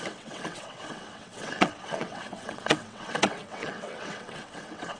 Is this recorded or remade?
remade